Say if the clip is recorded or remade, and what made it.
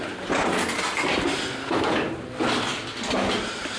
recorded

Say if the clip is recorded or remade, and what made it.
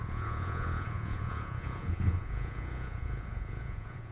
remade, vocoder, Vocos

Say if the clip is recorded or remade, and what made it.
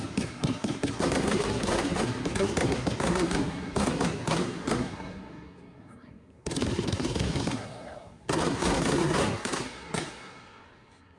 remade, codec, SNAC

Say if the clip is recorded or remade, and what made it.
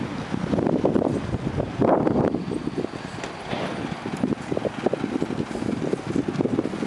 recorded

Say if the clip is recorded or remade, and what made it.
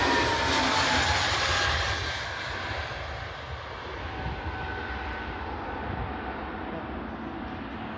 recorded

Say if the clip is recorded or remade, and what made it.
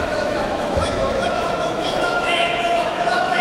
remade, autoencoder, DAC-VAE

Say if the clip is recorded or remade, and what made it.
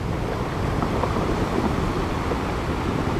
recorded